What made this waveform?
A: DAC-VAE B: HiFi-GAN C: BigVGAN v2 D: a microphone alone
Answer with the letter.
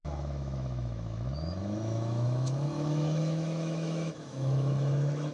A